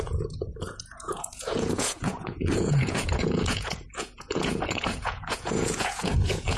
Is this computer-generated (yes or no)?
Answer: yes